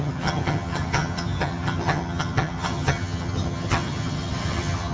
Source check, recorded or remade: remade